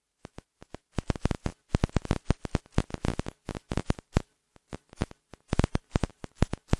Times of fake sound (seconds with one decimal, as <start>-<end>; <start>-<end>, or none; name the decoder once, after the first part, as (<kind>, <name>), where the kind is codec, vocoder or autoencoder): 0.0-1.5 (vocoder, BigVGAN v2); 3.7-6.8